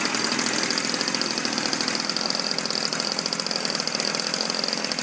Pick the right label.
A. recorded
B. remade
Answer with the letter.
A